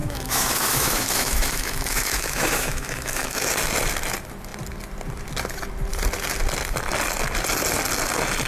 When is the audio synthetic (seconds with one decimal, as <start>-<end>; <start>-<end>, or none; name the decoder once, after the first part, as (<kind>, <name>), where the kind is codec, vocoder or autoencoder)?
0.0-3.5 (autoencoder, DAC-VAE)